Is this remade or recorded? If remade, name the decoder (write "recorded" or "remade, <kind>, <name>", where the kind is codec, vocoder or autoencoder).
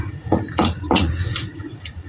remade, vocoder, Vocos